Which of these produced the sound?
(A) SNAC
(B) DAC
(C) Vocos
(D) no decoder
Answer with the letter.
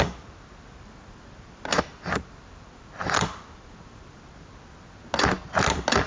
D